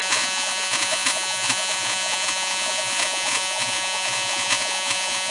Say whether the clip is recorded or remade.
remade